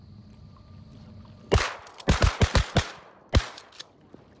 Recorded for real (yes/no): yes